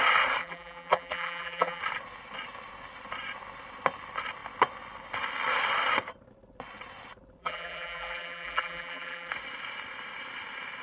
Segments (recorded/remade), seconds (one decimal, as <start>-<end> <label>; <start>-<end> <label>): 0.0-0.4 recorded; 0.4-1.8 remade; 1.8-7.4 recorded; 7.4-9.3 remade; 9.3-10.8 recorded